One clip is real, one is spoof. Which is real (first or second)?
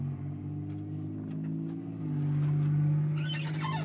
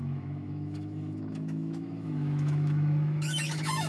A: first